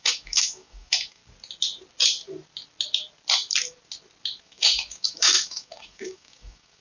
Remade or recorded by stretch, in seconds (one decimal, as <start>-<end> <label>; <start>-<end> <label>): 0.0-1.2 remade; 1.2-4.4 recorded; 4.4-6.8 remade